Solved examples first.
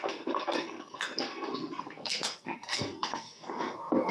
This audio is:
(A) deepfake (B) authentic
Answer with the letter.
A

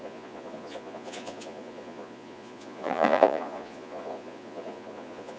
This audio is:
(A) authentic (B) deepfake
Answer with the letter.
B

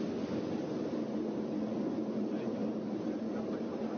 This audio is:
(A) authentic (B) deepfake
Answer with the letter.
A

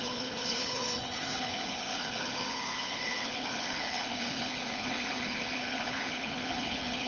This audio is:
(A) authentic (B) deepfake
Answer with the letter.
B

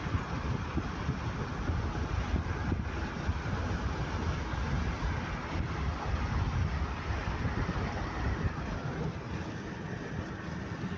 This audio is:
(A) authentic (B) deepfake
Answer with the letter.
A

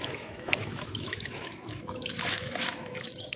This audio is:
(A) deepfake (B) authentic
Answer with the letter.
A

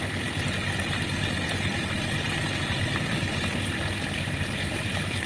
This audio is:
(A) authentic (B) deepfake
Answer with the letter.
A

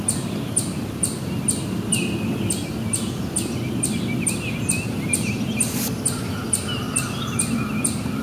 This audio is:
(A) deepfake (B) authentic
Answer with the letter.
B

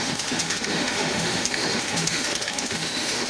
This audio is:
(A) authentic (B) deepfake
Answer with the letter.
B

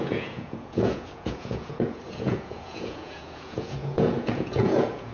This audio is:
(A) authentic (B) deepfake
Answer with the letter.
B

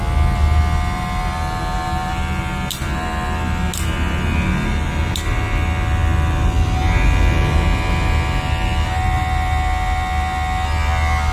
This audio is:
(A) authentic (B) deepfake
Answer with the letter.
A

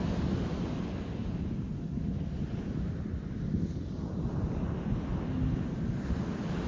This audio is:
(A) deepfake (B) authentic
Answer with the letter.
B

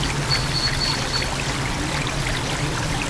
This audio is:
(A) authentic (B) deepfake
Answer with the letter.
A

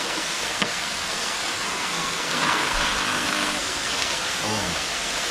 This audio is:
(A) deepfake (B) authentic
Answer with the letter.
A